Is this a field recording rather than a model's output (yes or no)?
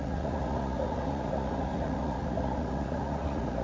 no